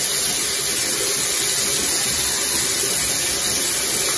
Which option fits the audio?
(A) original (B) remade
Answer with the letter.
A